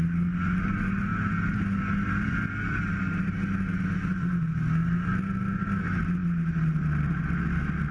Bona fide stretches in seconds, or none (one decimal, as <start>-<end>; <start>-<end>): 0.0-7.9